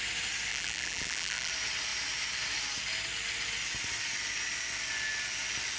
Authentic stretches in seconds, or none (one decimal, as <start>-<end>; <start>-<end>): 0.0-0.5; 1.5-5.8